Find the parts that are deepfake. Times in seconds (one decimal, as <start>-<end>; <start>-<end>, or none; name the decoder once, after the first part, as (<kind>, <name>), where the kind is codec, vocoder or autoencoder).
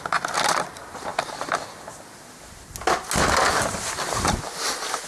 none